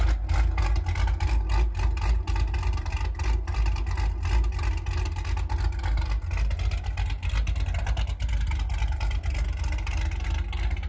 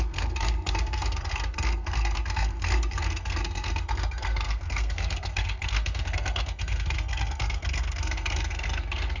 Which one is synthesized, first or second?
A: second